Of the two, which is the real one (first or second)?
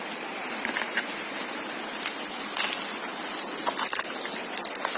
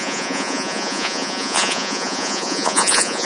first